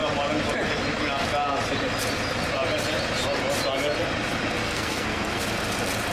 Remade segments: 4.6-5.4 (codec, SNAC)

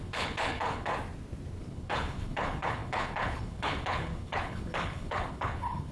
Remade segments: 0.0-0.9 (codec, HILCodec); 1.6-5.9

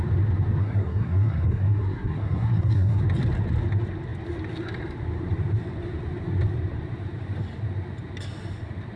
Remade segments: 0.6-3.0 (codec, SNAC)

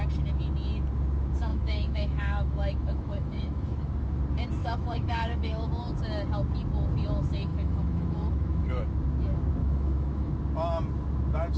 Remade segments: 1.5-3.9 (autoencoder, DAC-VAE); 4.6-5.7; 7.5-8.8; 9.6-10.3

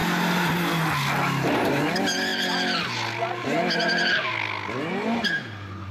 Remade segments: none

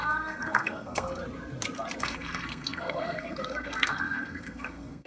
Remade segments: 0.0-1.2 (codec, SNAC); 2.0-5.1

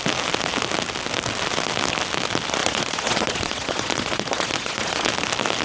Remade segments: 2.6-5.1 (vocoder, Vocos)